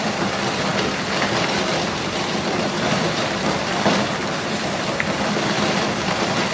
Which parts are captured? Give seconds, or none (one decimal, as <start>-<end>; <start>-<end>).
none